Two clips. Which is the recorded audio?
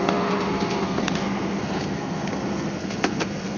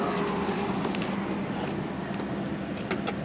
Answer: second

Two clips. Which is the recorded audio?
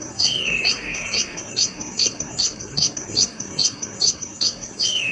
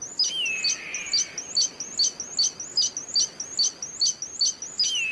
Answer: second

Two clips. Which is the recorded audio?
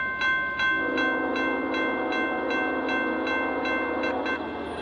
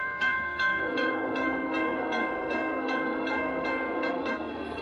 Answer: first